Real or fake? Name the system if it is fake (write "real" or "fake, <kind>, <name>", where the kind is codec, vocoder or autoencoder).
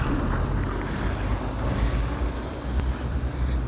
real